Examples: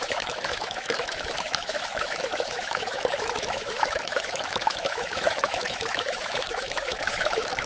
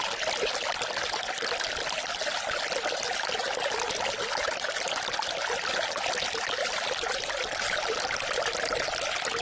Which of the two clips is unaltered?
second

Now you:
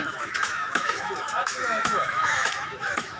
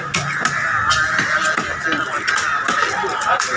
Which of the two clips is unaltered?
second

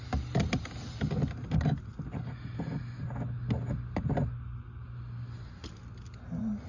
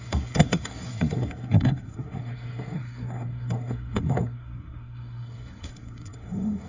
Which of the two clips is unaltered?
first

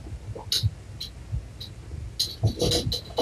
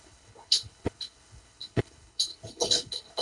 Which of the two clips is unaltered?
first